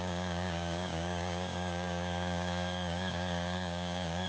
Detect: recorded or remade remade